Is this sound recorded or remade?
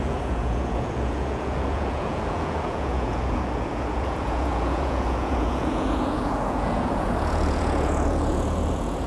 remade